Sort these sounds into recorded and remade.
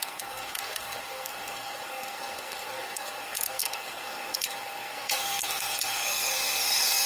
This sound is remade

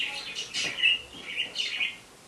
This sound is recorded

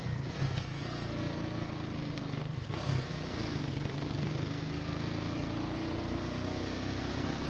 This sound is remade